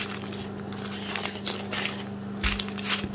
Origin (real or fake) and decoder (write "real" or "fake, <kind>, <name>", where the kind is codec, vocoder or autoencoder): real